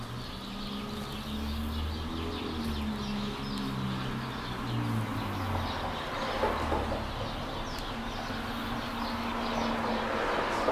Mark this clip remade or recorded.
recorded